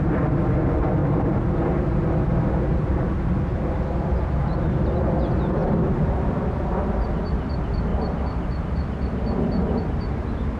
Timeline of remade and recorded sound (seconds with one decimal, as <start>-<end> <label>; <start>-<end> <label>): 0.0-1.0 recorded; 1.0-1.5 remade; 1.5-5.6 recorded; 5.6-6.4 remade; 6.4-10.6 recorded

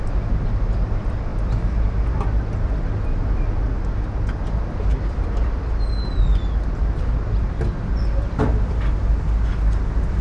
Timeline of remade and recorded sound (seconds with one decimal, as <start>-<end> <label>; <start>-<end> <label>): 0.0-4.9 recorded; 4.9-5.8 remade; 5.8-6.3 recorded; 6.3-9.0 remade; 9.0-10.2 recorded

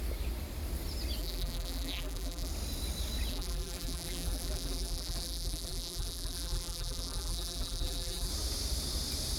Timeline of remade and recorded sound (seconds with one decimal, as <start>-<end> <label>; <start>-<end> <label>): 0.0-1.2 recorded; 1.2-2.5 remade; 2.5-3.3 recorded; 3.3-8.3 remade; 8.3-9.4 recorded

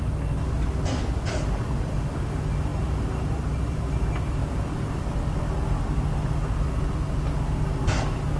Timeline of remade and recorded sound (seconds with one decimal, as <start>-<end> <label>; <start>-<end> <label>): 0.0-4.4 recorded; 4.4-5.4 remade; 5.4-8.4 recorded

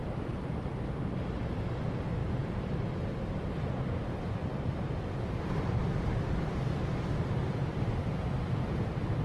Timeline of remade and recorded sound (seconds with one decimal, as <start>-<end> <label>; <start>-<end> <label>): 0.0-0.7 remade; 0.7-2.2 recorded; 2.2-2.8 remade; 2.8-4.4 recorded; 4.4-9.2 remade

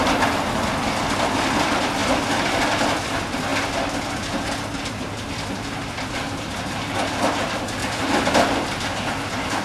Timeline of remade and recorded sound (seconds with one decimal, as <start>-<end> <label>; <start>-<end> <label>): 0.0-2.0 recorded; 2.0-2.6 remade; 2.6-7.8 recorded; 7.8-8.5 remade; 8.5-9.6 recorded

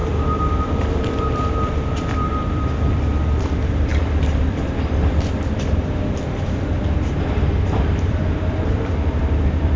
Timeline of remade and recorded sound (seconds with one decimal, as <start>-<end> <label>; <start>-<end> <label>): 0.0-9.8 remade

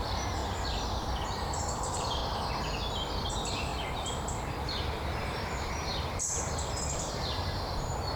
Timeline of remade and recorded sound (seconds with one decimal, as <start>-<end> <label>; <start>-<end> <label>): 0.0-0.4 remade; 0.4-1.0 recorded; 1.0-2.2 remade; 2.2-3.3 recorded; 3.3-8.2 remade